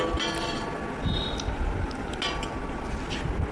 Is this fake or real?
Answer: real